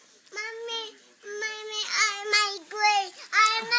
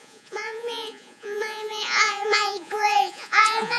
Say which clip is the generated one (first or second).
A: second